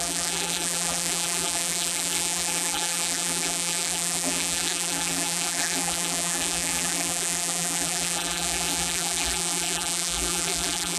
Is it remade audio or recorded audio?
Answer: remade